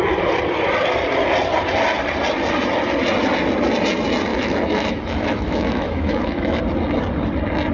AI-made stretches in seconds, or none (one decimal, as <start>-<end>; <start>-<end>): 4.3-6.6